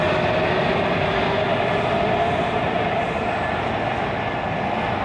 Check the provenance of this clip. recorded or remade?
recorded